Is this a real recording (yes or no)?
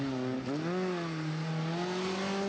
yes